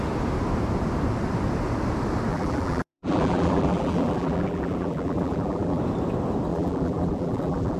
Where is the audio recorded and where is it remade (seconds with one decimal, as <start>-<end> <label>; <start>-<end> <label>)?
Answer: 0.0-2.3 recorded; 2.3-5.8 remade; 5.8-6.5 recorded; 6.5-7.8 remade